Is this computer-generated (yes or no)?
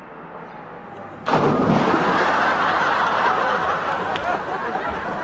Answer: no